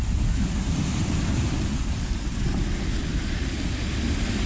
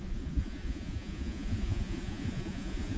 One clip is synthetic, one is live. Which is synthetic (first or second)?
second